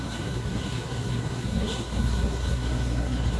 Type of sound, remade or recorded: remade